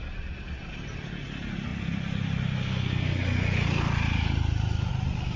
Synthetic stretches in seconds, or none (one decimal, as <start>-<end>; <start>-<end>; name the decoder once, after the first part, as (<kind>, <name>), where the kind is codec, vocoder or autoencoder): none